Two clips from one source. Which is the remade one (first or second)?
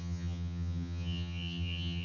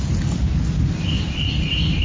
first